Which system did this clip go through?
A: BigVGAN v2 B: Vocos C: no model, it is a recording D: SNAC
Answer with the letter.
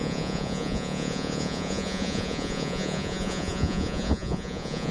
B